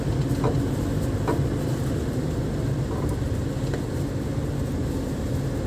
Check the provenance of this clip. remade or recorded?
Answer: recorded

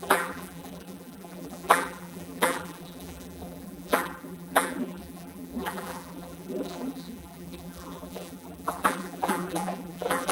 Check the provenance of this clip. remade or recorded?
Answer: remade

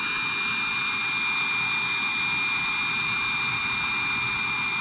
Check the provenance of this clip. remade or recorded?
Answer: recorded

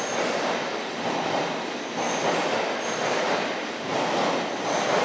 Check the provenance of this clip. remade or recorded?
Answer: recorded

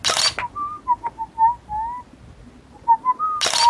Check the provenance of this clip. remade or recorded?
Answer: recorded